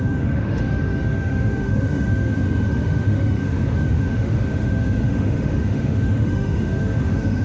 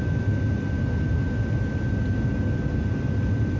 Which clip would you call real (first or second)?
second